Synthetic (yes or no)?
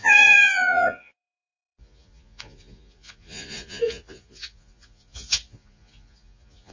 yes